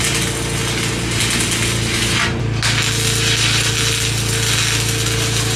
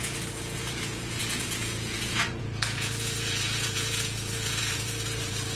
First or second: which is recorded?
first